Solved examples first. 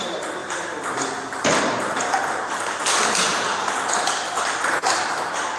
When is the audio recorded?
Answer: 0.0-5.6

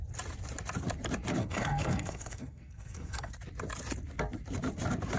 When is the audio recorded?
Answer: 0.0-1.4; 3.3-5.2